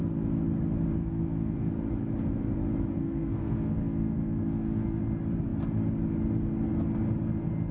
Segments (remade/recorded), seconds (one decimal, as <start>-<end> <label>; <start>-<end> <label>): 0.0-1.0 recorded; 1.0-1.7 remade; 1.7-3.0 recorded; 3.0-5.0 remade; 5.0-7.7 recorded